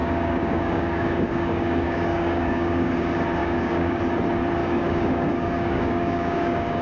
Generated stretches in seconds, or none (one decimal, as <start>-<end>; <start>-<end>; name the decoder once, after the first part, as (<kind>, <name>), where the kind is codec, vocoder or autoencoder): 0.0-2.9 (codec, DAC); 3.4-4.0; 4.6-6.8